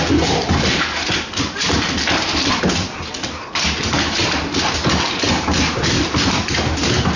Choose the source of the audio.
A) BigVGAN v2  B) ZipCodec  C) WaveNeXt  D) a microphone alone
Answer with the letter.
D